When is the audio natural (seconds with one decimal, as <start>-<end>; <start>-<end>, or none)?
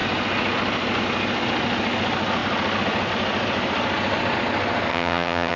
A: 0.0-4.9